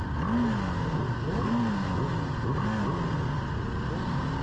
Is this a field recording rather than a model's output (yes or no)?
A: yes